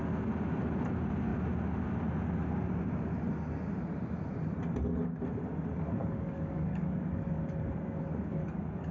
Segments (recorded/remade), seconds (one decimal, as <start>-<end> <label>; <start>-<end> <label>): 0.0-6.0 recorded; 6.0-7.4 remade; 7.4-8.3 recorded; 8.3-8.9 remade